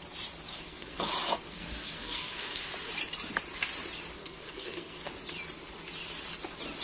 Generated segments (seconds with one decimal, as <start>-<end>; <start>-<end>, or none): 0.5-1.1; 1.5-2.6; 4.2-5.1